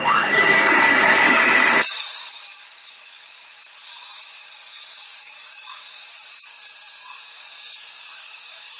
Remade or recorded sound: remade